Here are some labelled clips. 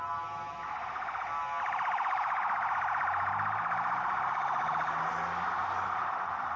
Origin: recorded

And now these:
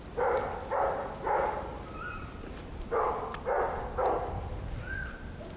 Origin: recorded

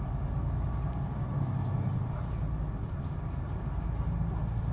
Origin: recorded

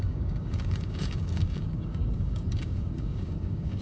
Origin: remade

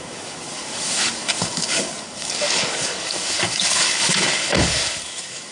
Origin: remade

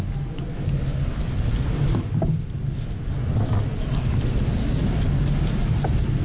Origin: recorded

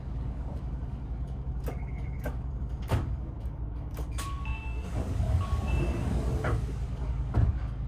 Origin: remade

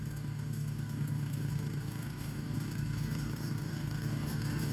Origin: remade